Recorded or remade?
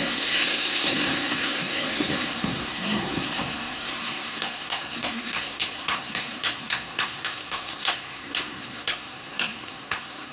remade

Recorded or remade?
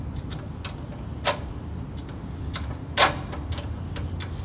recorded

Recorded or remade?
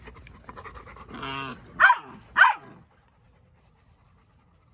recorded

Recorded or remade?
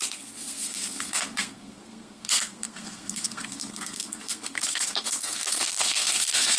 remade